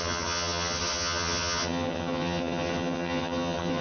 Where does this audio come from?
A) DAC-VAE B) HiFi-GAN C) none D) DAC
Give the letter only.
B